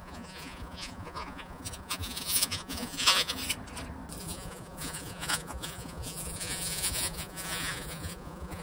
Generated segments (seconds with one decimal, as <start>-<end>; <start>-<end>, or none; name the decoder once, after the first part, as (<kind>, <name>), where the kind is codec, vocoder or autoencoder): 0.0-3.4 (vocoder, Vocos); 4.2-8.6